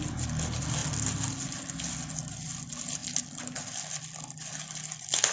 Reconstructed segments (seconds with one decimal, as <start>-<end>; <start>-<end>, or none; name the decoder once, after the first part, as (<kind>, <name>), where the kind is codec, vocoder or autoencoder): none